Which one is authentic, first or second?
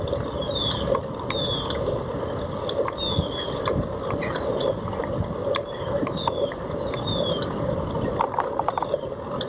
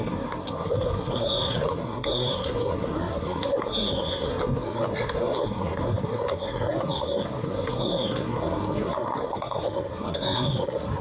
first